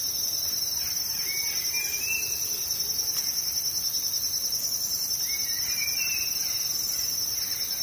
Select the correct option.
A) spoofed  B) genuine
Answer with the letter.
B